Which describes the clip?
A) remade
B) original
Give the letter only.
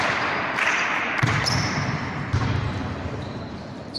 A